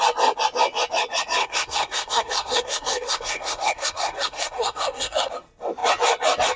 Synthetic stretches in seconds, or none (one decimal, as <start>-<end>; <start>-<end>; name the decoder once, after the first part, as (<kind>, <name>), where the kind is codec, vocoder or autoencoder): 1.4-5.3 (codec, SNAC)

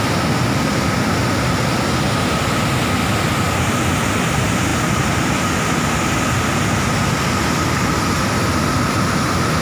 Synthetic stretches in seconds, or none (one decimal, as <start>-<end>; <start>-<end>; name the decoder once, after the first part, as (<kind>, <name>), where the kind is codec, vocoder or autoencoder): none

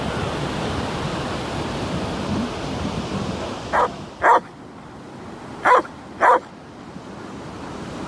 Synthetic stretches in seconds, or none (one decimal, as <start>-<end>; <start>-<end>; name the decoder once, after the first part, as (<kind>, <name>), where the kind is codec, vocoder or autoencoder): none

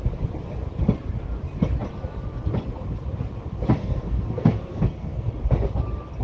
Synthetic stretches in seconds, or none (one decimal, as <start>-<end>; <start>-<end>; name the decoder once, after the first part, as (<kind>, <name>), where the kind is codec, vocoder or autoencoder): 3.8-5.3 (codec, SNAC)

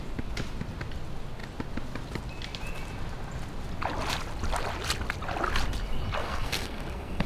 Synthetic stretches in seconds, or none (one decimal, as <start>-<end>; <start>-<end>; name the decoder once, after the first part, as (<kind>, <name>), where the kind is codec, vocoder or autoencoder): 6.2-7.3 (codec, SNAC)

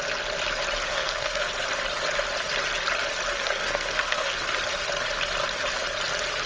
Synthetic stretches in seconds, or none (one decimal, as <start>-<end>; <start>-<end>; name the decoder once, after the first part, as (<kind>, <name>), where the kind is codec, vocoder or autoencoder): 0.9-1.5 (codec, SNAC); 3.3-4.4

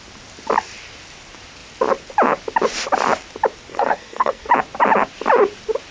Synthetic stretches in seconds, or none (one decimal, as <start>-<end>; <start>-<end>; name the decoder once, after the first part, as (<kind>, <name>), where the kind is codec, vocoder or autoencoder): 3.7-4.5 (codec, SNAC)

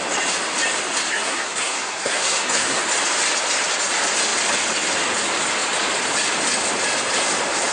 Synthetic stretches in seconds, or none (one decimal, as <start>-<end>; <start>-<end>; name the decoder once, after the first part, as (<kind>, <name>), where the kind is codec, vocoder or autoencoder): 1.1-2.8 (codec, SNAC)